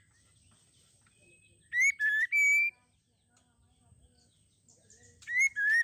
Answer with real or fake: real